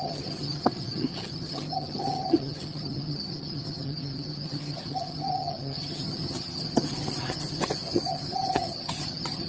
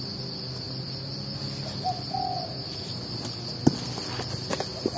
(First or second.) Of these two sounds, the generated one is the first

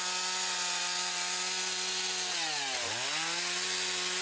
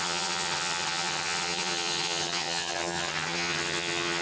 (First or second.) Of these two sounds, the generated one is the second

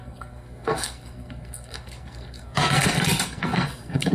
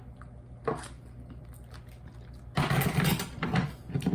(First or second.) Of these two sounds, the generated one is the first